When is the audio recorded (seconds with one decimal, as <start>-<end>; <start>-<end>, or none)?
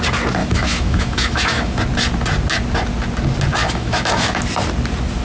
0.0-0.4; 1.8-3.6; 4.4-5.2